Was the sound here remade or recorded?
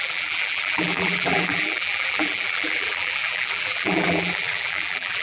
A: remade